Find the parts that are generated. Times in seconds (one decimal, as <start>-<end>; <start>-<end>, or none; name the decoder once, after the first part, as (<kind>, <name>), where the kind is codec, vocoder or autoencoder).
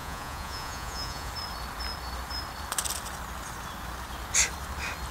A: 0.0-1.3 (vocoder, Vocos)